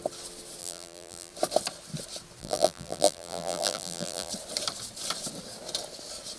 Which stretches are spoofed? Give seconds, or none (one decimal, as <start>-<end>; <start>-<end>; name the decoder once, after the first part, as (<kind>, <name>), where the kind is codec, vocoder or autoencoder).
0.6-1.3 (vocoder, BigVGAN v2); 2.4-4.3